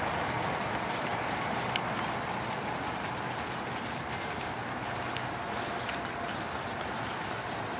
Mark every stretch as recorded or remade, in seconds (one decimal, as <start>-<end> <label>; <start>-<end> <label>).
0.0-7.8 recorded